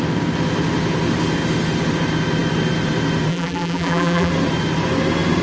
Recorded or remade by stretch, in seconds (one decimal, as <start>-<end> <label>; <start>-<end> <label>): 0.0-3.3 recorded; 3.3-4.3 remade; 4.3-5.4 recorded